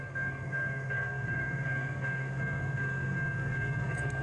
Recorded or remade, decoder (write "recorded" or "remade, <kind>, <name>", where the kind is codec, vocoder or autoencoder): remade, codec, SNAC